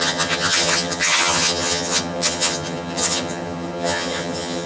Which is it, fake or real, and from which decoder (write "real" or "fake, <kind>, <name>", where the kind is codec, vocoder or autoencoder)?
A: fake, vocoder, HiFi-GAN